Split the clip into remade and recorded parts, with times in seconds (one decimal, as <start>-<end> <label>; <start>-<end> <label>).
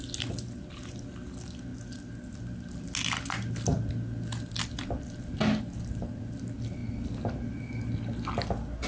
0.0-8.9 recorded